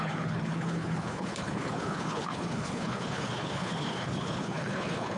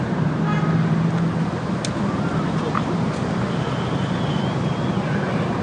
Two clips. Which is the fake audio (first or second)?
first